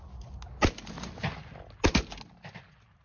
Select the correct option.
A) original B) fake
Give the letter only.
A